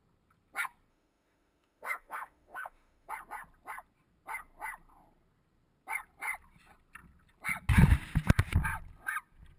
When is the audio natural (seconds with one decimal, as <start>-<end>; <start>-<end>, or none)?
0.0-0.9; 3.1-9.6